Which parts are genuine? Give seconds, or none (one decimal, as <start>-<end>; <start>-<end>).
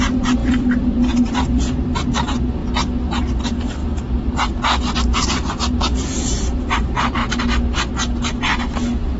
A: 2.6-3.2; 3.8-5.0; 7.2-9.2